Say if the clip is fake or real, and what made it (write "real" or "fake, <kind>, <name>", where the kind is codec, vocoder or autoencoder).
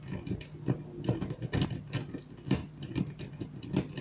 real